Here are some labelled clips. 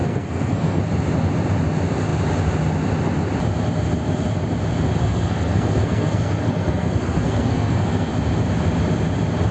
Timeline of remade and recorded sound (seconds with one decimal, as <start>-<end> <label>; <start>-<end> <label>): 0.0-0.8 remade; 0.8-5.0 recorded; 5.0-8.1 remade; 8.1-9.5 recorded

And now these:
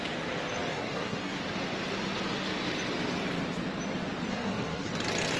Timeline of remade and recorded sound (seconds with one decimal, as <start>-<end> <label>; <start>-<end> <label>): 0.0-0.7 recorded; 0.7-1.4 remade; 1.4-4.3 recorded; 4.3-4.9 remade; 4.9-5.4 recorded

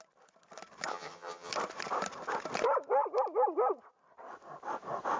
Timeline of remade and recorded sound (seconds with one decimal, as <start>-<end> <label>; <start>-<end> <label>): 0.0-0.9 recorded; 0.9-1.5 remade; 1.5-5.2 recorded

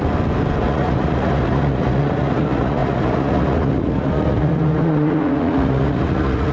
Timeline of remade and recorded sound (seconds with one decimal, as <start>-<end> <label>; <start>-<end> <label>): 0.0-0.6 recorded; 0.6-6.5 remade